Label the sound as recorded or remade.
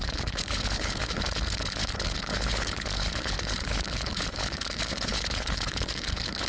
remade